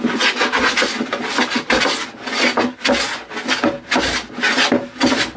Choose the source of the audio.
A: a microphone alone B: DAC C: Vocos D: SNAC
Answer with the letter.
A